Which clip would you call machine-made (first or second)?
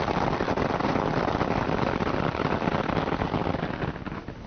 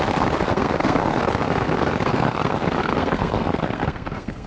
second